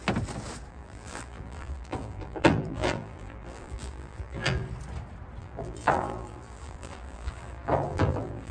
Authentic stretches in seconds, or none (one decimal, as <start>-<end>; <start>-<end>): 0.0-0.7; 4.6-5.4